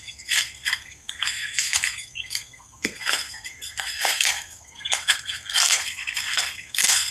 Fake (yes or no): yes